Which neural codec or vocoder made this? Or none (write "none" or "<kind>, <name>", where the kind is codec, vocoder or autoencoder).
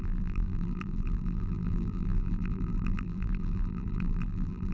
vocoder, BigVGAN v2